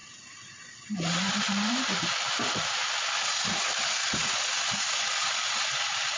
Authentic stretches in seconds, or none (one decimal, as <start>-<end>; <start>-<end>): 2.9-6.2

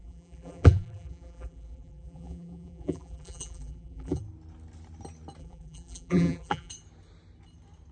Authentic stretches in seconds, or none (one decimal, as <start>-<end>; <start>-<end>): 4.2-5.4; 6.7-7.9

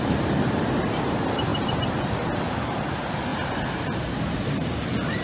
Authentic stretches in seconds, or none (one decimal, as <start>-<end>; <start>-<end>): 3.3-5.2

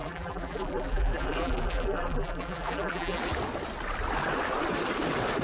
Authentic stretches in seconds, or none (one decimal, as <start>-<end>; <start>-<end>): 3.2-5.4